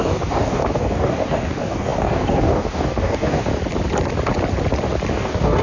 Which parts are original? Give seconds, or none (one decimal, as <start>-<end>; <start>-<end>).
3.5-5.1